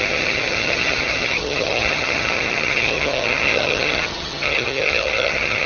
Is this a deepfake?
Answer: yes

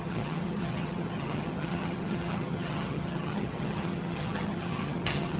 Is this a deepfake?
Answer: yes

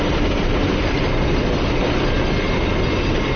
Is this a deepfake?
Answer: no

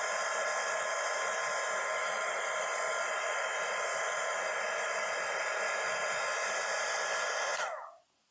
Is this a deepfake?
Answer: no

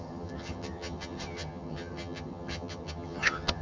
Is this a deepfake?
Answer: yes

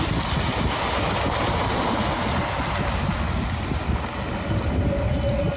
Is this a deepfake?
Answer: no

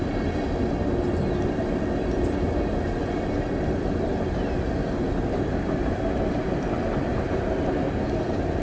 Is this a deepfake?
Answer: no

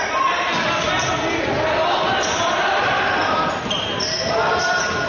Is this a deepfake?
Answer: no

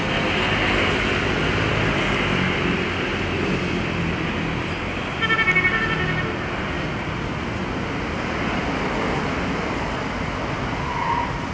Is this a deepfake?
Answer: no